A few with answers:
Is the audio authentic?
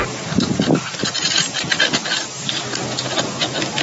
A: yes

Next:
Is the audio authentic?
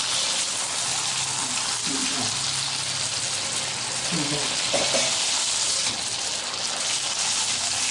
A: yes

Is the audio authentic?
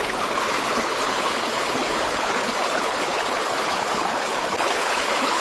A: no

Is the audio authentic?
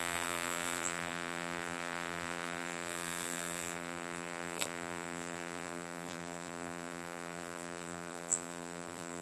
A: no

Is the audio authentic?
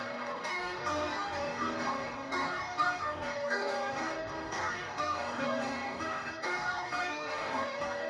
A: no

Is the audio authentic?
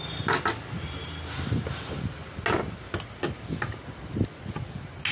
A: yes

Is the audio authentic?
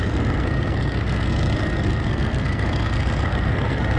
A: no